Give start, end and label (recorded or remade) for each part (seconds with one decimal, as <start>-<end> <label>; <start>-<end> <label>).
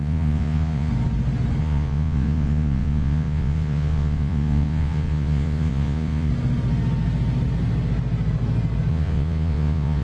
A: 0.0-0.9 remade; 0.9-1.6 recorded; 1.6-6.3 remade; 6.3-8.9 recorded; 8.9-10.0 remade